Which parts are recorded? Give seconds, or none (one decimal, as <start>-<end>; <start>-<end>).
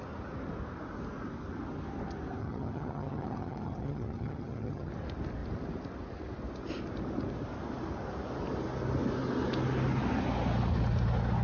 0.0-2.4; 4.9-11.4